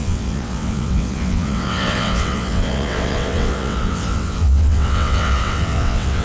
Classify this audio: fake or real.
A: fake